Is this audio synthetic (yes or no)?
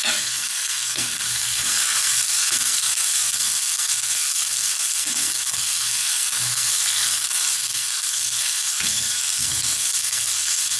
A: yes